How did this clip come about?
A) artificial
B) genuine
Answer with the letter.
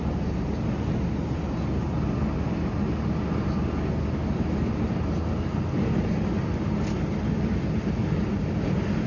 B